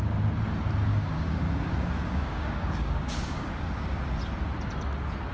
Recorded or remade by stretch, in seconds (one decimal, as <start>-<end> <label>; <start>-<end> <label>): 0.0-0.9 recorded; 0.9-4.0 remade; 4.0-5.3 recorded